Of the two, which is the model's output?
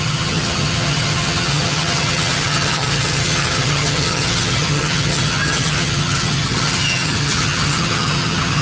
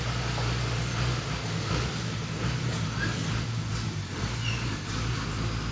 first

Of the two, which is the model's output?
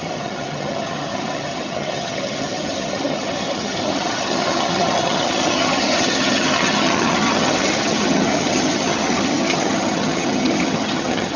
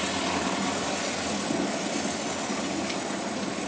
first